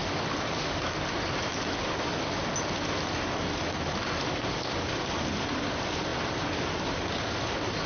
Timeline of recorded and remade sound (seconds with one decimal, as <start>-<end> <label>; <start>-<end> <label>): 0.0-7.9 recorded